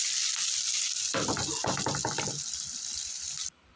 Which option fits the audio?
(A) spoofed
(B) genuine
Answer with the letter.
B